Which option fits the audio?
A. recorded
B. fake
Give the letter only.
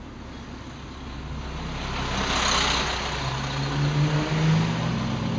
A